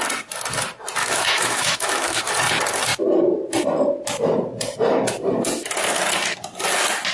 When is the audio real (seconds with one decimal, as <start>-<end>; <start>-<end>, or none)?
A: 0.0-1.0; 2.2-7.1